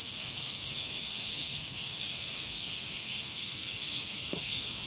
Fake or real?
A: fake